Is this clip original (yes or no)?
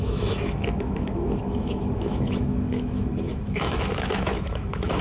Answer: no